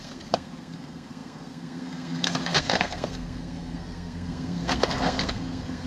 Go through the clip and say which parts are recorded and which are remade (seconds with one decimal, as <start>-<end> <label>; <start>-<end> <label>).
0.0-5.9 remade